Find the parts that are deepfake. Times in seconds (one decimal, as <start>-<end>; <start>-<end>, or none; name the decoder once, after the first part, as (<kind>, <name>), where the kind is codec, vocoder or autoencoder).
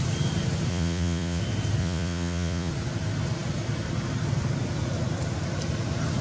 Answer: 0.7-1.4 (vocoder, Vocos); 1.8-2.7